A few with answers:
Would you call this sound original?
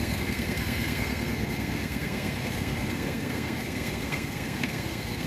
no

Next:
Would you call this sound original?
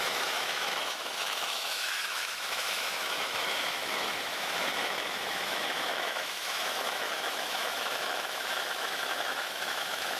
no